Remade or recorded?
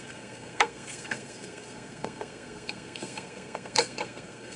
remade